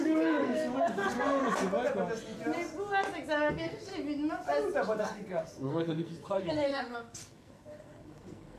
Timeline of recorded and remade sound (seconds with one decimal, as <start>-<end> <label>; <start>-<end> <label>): 0.0-1.4 remade; 1.4-3.5 recorded; 3.5-3.9 remade; 3.9-5.0 recorded; 5.0-8.6 remade